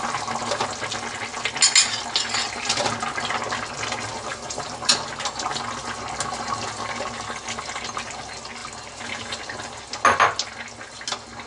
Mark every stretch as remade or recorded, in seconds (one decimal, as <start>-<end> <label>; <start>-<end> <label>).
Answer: 0.0-4.3 recorded; 4.3-4.9 remade; 4.9-11.5 recorded